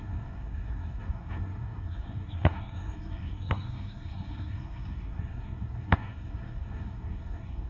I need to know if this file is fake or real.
fake